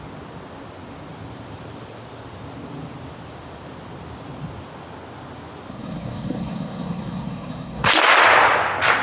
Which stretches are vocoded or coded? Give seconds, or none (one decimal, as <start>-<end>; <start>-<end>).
5.7-7.9